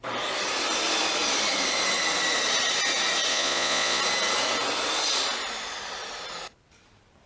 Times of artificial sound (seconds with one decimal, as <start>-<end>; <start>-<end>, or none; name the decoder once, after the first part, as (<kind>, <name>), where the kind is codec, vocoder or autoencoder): 3.3-4.0 (vocoder, Vocos)